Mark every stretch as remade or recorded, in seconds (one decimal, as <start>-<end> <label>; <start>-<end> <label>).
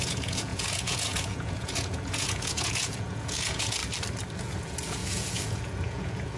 0.0-3.8 remade; 3.8-4.4 recorded; 4.4-6.4 remade